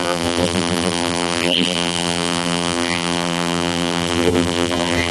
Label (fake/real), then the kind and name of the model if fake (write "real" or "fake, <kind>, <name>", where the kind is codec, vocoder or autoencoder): fake, vocoder, BigVGAN v2